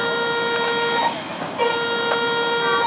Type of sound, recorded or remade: recorded